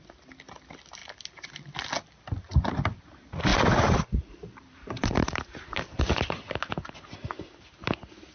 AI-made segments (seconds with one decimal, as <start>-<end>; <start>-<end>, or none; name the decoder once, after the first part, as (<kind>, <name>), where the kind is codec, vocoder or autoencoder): 3.5-6.2 (vocoder, BigVGAN v2)